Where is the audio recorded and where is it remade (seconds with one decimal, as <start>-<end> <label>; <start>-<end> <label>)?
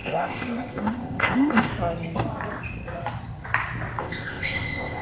0.0-1.7 remade; 1.7-4.0 recorded; 4.0-5.0 remade